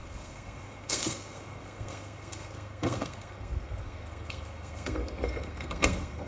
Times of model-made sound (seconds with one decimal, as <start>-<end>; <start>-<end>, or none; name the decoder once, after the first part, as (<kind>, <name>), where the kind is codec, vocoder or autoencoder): 0.0-6.3 (codec, SNAC)